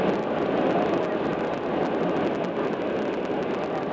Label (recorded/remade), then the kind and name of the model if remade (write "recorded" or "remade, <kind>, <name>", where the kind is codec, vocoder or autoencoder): recorded